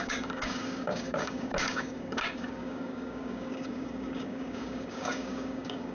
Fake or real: fake